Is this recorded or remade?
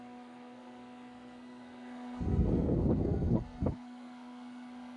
remade